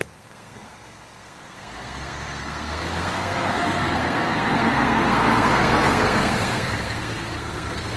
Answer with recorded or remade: remade